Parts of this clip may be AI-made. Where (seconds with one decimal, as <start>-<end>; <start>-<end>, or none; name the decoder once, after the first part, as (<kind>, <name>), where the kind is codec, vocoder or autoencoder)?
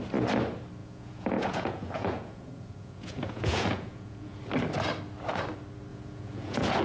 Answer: 0.8-4.4 (vocoder, Vocos); 5.9-6.8